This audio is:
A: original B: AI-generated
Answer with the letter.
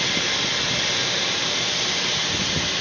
A